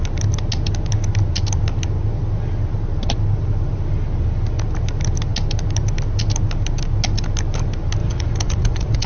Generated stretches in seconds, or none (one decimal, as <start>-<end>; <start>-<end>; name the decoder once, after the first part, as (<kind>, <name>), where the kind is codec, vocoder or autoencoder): 8.0-9.1 (vocoder, Vocos)

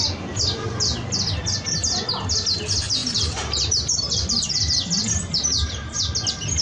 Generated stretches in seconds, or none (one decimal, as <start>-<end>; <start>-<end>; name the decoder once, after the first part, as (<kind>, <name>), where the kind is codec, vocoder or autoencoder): 3.0-4.5 (vocoder, BigVGAN v2); 5.0-6.0

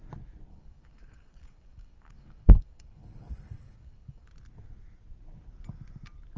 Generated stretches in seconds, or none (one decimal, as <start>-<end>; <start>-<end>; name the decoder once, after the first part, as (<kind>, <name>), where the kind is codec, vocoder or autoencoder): 0.5-4.3 (codec, DAC)

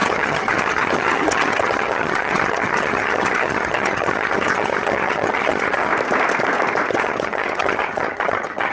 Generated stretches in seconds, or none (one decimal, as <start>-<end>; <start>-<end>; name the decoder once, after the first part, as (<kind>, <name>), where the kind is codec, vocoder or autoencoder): 0.0-5.9 (vocoder, HiFi-GAN); 6.9-8.7

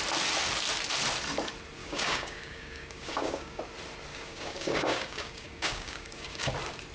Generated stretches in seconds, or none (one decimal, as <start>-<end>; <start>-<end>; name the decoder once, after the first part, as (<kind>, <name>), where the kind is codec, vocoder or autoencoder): 1.8-3.6 (codec, DAC); 4.1-6.5

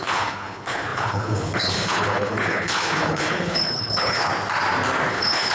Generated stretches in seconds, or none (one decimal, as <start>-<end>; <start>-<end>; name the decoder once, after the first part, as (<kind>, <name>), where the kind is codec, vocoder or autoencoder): 0.0-4.3 (codec, HILCodec); 5.1-5.5

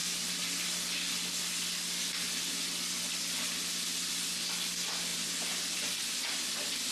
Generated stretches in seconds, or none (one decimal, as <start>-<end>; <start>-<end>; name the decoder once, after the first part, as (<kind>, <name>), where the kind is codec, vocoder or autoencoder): none

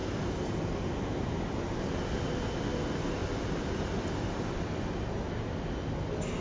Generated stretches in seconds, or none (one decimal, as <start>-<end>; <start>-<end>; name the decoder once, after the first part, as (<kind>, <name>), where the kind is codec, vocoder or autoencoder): 3.2-5.1 (vocoder, BigVGAN v2)